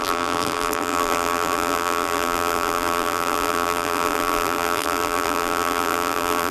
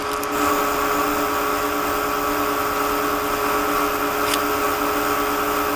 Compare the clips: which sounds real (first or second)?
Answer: second